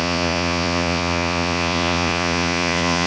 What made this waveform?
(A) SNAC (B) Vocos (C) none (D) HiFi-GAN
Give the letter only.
B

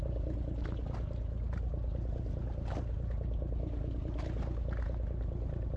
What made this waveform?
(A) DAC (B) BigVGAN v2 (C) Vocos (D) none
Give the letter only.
D